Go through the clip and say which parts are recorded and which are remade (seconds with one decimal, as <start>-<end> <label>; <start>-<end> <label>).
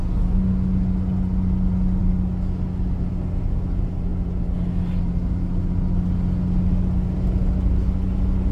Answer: 0.0-8.5 recorded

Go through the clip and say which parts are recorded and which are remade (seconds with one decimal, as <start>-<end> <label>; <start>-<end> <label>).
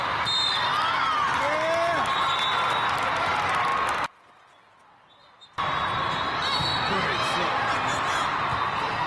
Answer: 0.0-6.7 recorded; 6.7-7.7 remade; 7.7-9.1 recorded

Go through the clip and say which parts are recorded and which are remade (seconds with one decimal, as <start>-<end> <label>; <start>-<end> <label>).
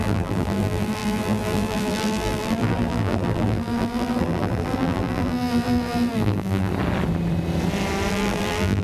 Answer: 0.0-6.7 remade; 6.7-8.1 recorded; 8.1-8.8 remade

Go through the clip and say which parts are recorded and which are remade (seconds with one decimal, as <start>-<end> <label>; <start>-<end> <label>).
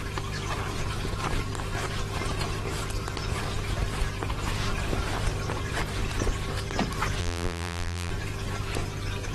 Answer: 0.0-7.2 recorded; 7.2-8.1 remade; 8.1-9.3 recorded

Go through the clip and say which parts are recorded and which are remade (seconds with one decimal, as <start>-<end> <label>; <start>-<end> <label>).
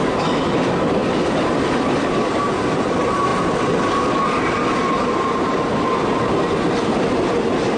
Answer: 0.0-7.8 recorded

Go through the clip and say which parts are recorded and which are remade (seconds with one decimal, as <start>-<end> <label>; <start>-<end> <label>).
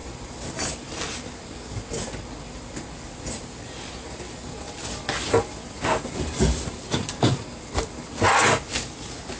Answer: 0.0-9.4 recorded